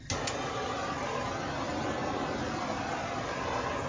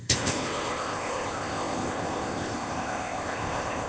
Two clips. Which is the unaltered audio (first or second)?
first